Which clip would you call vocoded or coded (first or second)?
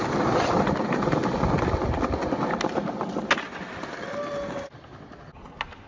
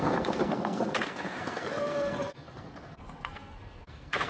second